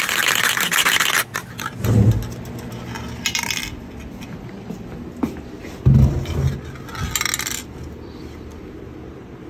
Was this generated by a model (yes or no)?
no